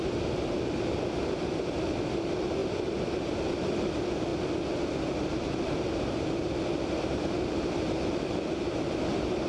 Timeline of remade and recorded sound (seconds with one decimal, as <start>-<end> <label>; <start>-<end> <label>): 0.0-2.6 remade; 2.6-3.4 recorded; 3.4-4.3 remade; 4.3-5.6 recorded; 5.6-9.5 remade